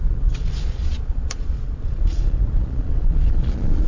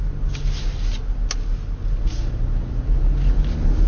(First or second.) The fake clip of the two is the first